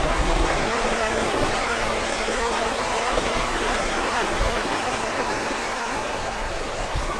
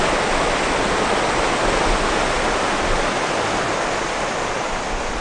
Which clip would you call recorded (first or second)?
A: second